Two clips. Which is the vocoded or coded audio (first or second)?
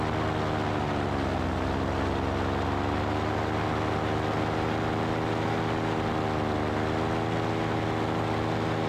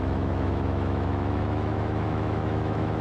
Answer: second